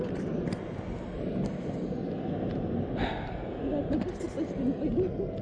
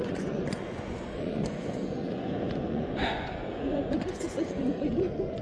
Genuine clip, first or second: first